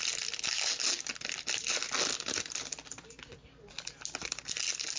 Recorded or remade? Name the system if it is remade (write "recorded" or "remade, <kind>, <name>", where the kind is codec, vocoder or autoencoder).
recorded